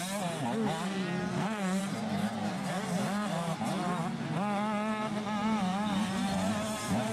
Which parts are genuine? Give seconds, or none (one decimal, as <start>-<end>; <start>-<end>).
0.0-1.2; 1.8-7.1